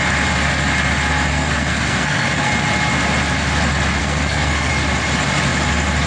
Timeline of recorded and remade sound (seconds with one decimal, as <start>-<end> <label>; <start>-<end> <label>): 0.0-1.3 recorded; 1.3-2.5 remade; 2.5-4.0 recorded; 4.0-4.7 remade; 4.7-6.1 recorded